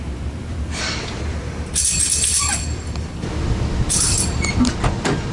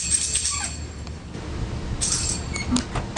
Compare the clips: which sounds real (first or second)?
second